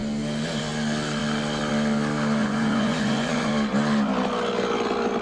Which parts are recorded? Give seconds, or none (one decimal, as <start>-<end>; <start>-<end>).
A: 0.0-2.4; 3.5-5.2